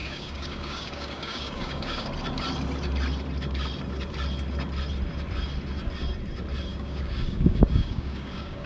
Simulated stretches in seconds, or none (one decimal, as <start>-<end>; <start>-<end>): 0.0-2.1; 6.7-8.7